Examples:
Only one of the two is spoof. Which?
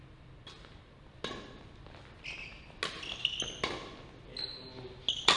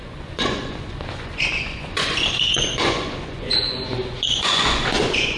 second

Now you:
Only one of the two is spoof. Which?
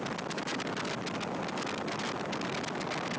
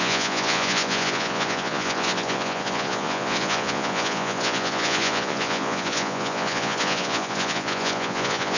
second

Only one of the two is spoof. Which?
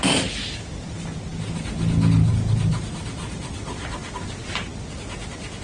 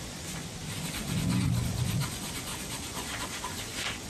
second